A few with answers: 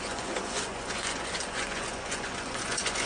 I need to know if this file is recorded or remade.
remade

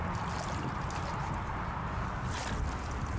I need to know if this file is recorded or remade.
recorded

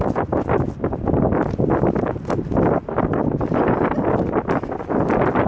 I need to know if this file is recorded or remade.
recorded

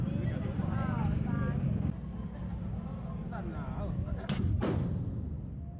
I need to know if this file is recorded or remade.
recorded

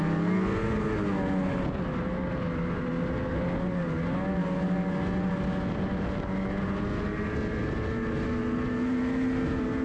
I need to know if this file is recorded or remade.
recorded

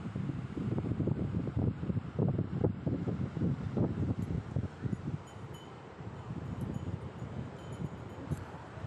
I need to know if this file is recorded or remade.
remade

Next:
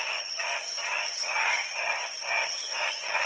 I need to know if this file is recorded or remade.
remade